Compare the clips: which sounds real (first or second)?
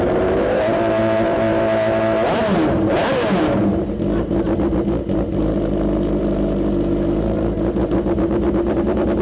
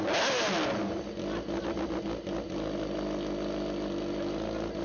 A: second